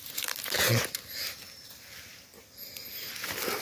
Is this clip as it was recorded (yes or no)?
yes